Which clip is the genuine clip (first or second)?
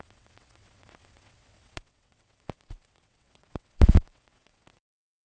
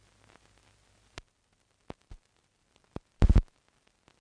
second